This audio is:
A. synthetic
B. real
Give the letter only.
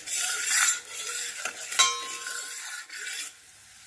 B